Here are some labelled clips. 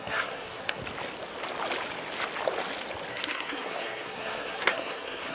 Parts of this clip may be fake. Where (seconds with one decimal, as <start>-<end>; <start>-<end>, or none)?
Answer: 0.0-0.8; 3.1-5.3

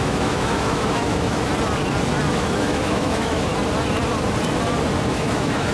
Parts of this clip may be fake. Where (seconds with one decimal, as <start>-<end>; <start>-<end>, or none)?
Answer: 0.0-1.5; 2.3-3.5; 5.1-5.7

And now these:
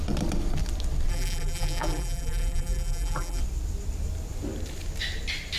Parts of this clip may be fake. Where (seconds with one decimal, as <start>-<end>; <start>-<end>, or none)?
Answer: 1.1-3.4